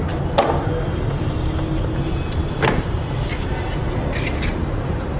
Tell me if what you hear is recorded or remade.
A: recorded